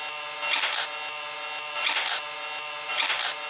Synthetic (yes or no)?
no